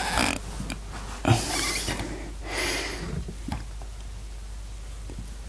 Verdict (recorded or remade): recorded